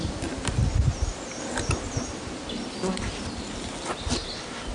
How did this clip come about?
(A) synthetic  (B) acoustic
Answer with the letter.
B